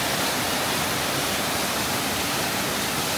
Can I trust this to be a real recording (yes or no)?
yes